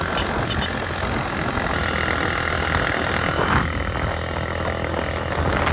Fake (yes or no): no